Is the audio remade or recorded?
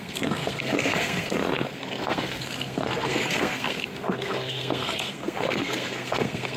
remade